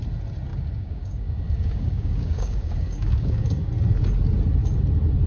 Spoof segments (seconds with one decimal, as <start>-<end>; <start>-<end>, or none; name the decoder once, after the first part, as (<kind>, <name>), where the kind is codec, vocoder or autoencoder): 0.5-3.7 (codec, DAC)